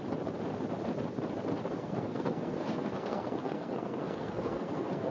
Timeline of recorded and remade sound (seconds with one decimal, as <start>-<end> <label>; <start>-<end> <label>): 0.0-1.7 recorded; 1.7-5.1 remade